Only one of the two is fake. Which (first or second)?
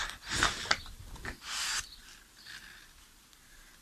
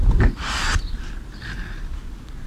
second